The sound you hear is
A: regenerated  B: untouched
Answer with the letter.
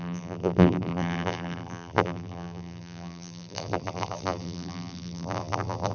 A